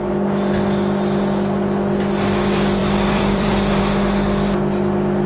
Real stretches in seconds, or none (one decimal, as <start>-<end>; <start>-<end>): 0.0-2.8; 3.8-5.3